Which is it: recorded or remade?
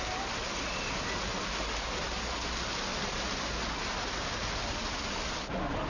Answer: recorded